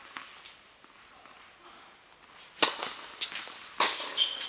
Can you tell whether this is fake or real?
real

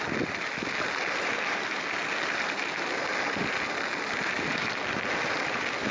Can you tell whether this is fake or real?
real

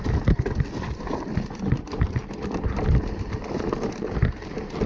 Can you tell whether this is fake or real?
real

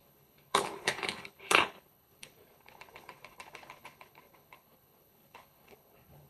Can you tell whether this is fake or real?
fake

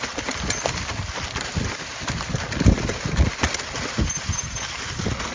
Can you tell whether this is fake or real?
real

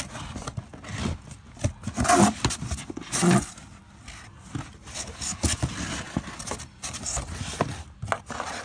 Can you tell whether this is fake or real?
real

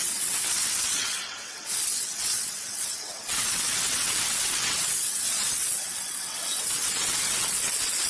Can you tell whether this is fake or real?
fake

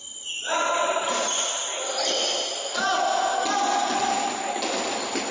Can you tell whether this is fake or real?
real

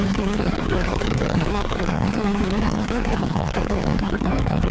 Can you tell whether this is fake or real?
fake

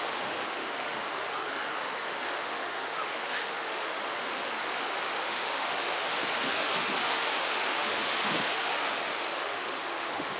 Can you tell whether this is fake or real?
fake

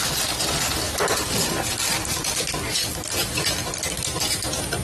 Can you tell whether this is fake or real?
real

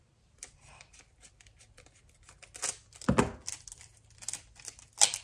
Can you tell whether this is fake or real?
real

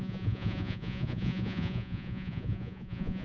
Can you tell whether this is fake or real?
fake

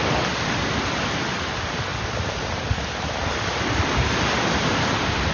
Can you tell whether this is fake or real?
real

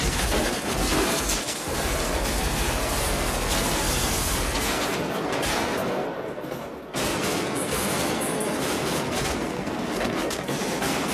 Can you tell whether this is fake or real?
fake